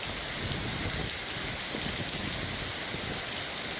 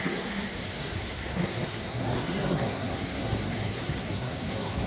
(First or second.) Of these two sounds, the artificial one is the second